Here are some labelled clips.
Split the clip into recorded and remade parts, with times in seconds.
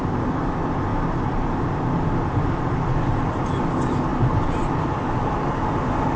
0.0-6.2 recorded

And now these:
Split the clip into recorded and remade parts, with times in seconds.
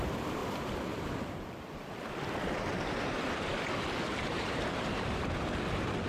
0.0-0.4 remade; 0.4-2.9 recorded; 2.9-3.5 remade; 3.5-4.3 recorded; 4.3-6.1 remade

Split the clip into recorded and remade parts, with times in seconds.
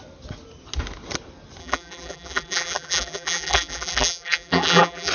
0.0-1.6 recorded; 1.6-5.1 remade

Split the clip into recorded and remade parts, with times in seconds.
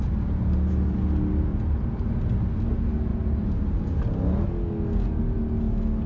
0.0-1.5 recorded; 1.5-2.1 remade; 2.1-3.1 recorded; 3.1-3.8 remade; 3.8-6.1 recorded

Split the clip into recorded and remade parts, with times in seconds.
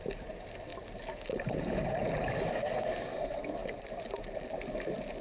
0.0-0.7 remade; 0.7-2.3 recorded; 2.3-3.6 remade; 3.6-4.2 recorded; 4.2-5.2 remade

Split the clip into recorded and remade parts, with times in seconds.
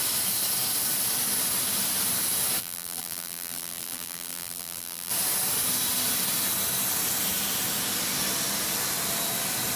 0.0-2.6 recorded; 2.6-5.1 remade; 5.1-9.8 recorded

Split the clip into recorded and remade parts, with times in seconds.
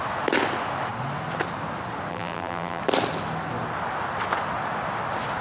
0.0-2.1 recorded; 2.1-2.8 remade; 2.8-5.4 recorded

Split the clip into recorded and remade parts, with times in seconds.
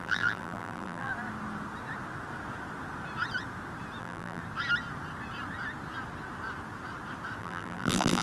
0.0-1.1 remade; 1.1-4.0 recorded; 4.0-4.4 remade; 4.4-7.4 recorded; 7.4-8.2 remade